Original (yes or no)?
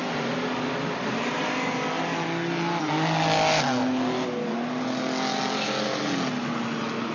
yes